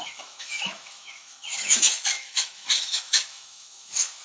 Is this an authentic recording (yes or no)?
no